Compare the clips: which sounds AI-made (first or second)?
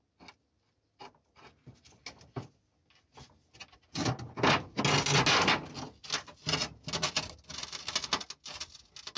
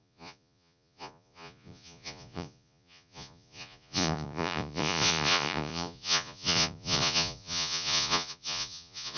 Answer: second